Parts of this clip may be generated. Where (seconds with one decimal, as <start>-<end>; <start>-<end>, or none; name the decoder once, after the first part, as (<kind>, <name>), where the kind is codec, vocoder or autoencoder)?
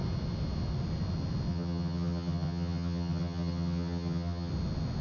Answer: 1.5-4.5 (vocoder, HiFi-GAN)